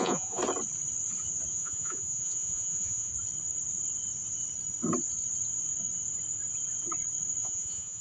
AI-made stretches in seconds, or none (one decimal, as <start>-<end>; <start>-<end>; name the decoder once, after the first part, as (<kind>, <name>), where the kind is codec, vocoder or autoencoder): 0.0-0.4 (vocoder, Vocos); 1.5-3.1; 7.4-8.0